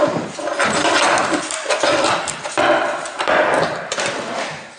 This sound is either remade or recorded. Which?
remade